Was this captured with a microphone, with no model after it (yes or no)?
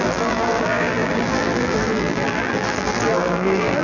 no